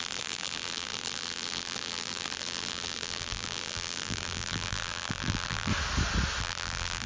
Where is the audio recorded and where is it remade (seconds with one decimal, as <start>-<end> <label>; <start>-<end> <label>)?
0.0-5.7 remade; 5.7-6.4 recorded; 6.4-7.1 remade